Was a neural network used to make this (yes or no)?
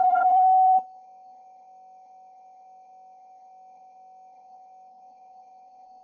yes